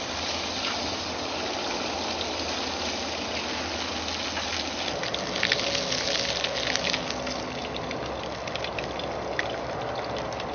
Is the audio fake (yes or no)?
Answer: no